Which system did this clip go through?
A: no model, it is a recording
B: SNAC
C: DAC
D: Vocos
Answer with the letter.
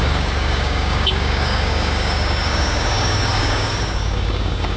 C